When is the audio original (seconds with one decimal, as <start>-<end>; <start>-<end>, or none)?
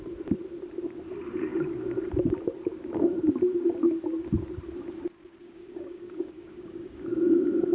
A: 0.0-5.4; 7.2-7.7